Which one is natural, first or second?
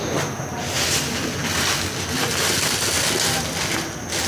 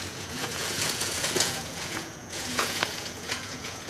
first